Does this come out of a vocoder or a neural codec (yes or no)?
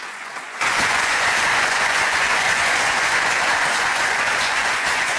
yes